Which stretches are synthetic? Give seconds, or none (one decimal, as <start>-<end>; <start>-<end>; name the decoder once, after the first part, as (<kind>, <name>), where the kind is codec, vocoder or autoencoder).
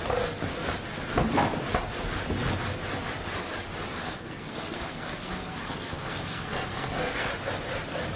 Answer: 4.0-7.3 (codec, SNAC)